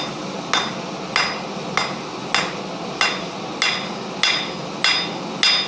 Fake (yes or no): no